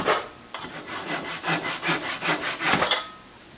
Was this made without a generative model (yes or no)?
yes